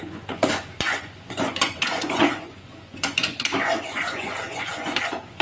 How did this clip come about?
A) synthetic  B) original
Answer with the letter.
A